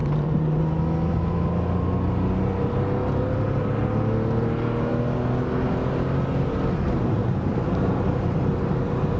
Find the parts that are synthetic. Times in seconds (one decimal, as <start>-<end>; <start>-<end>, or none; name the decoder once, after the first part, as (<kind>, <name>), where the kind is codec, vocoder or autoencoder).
0.0-0.6 (vocoder, BigVGAN v2); 7.2-8.0